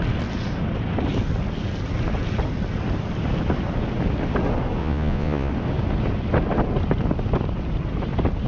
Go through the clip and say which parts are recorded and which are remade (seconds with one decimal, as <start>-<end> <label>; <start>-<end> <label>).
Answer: 0.0-4.8 recorded; 4.8-5.5 remade; 5.5-8.5 recorded